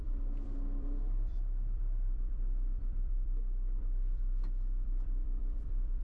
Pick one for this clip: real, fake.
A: fake